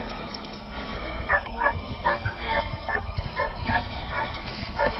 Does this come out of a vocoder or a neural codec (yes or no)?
yes